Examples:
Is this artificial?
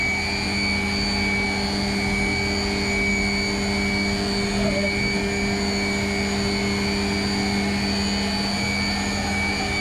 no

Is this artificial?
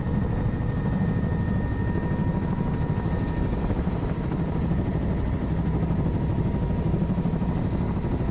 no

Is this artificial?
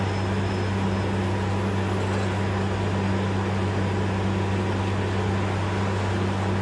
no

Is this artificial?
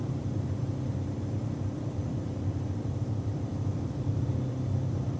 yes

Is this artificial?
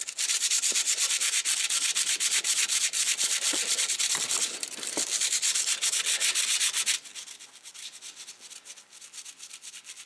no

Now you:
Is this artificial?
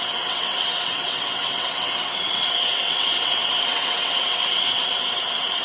yes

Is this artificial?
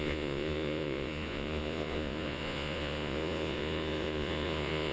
yes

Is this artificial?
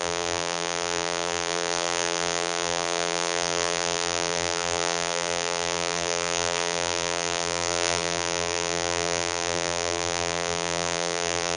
yes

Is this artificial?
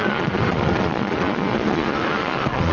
yes